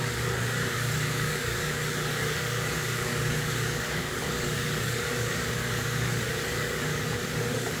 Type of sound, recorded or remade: remade